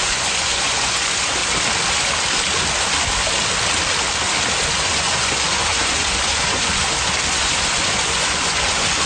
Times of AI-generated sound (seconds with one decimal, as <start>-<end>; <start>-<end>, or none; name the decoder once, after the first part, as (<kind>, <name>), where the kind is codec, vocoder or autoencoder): 0.0-1.4 (vocoder, Vocos); 4.8-6.8; 7.3-9.1